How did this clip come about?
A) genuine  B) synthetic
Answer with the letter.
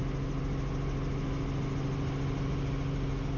A